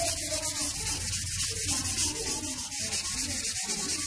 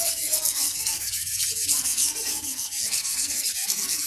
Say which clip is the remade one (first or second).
second